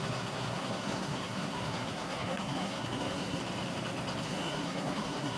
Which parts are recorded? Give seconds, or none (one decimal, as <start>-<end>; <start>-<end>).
3.4-4.2